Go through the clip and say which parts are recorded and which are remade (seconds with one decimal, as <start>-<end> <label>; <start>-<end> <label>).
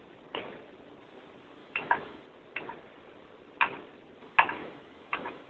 0.0-1.6 recorded; 1.6-2.2 remade; 2.2-4.6 recorded; 4.6-5.5 remade